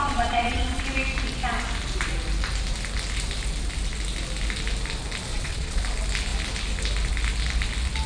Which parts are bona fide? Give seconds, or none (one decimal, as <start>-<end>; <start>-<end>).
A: 0.8-5.3; 5.8-8.1